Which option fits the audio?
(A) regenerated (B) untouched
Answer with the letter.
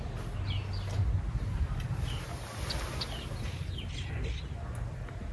B